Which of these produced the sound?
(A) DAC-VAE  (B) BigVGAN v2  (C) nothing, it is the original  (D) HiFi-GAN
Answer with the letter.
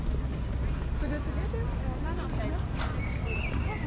C